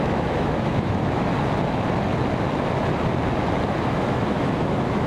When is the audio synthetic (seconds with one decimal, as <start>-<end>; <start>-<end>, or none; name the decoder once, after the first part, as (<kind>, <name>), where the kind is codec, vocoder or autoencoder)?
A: 0.0-1.3 (autoencoder, DAC-VAE); 3.8-5.1